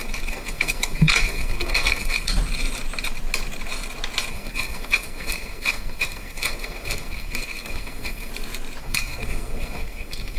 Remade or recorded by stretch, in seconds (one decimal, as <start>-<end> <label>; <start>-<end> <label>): 0.0-2.3 remade; 2.3-4.3 recorded; 4.3-8.3 remade; 8.3-8.8 recorded; 8.8-10.4 remade